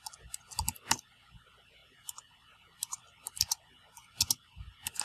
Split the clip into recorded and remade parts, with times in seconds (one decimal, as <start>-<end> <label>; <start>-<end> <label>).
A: 0.0-1.8 recorded; 1.8-3.6 remade; 3.6-5.0 recorded

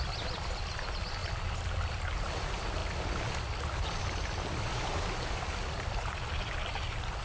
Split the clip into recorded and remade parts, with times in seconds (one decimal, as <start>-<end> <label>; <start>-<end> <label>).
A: 0.0-7.2 recorded

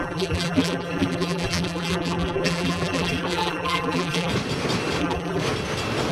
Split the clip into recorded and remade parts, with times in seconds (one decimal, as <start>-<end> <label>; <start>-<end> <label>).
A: 0.0-4.3 remade; 4.3-5.0 recorded; 5.0-5.4 remade; 5.4-6.1 recorded

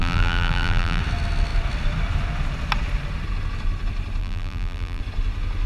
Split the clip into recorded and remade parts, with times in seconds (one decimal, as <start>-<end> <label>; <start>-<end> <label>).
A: 0.0-1.0 remade; 1.0-4.2 recorded; 4.2-5.0 remade; 5.0-5.7 recorded